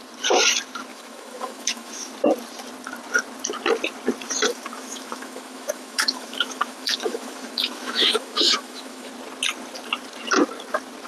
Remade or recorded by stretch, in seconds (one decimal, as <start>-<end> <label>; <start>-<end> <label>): 0.0-0.9 recorded; 0.9-2.1 remade; 2.1-4.5 recorded; 4.5-9.1 remade; 9.1-11.1 recorded